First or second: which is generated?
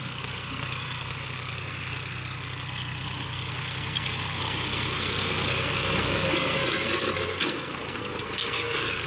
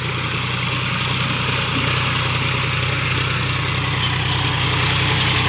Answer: first